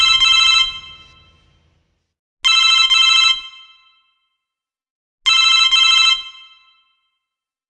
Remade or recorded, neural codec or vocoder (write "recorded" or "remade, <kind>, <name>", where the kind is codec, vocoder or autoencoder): recorded